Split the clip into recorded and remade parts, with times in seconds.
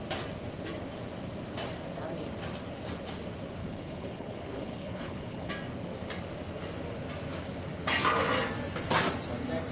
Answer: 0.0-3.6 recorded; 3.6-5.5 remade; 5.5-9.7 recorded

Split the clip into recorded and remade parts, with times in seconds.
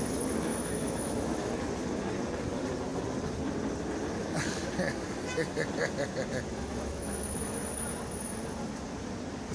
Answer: 0.0-0.5 recorded; 0.5-1.6 remade; 1.6-6.3 recorded; 6.3-7.7 remade; 7.7-9.5 recorded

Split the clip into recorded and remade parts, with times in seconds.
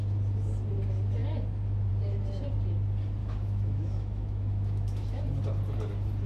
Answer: 0.0-3.2 recorded; 3.2-5.2 remade; 5.2-6.3 recorded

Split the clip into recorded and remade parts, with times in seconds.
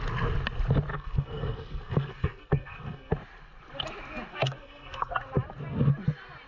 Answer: 0.0-0.9 recorded; 0.9-3.1 remade; 3.1-4.3 recorded; 4.3-5.1 remade; 5.1-6.5 recorded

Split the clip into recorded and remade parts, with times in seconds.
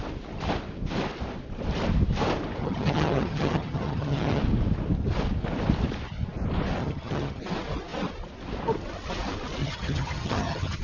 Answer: 0.0-2.6 recorded; 2.6-4.4 remade; 4.4-6.8 recorded; 6.8-7.4 remade; 7.4-9.6 recorded; 9.6-10.8 remade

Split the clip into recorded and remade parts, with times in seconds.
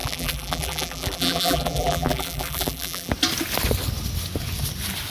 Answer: 0.0-3.1 remade; 3.1-5.1 recorded